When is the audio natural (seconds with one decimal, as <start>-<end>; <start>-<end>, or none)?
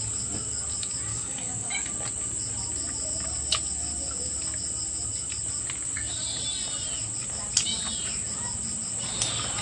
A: 0.0-1.1; 1.9-9.6